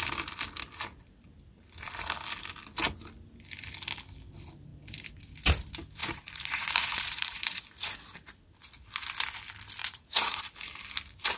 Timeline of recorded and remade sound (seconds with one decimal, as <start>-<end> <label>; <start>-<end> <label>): 0.0-6.0 recorded; 6.0-7.6 remade; 7.6-9.8 recorded; 9.8-10.4 remade; 10.4-11.4 recorded